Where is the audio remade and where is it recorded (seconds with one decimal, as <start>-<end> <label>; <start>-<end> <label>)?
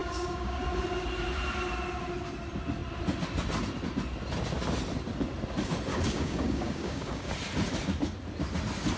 0.0-0.6 remade; 0.6-5.9 recorded; 5.9-7.3 remade; 7.3-9.0 recorded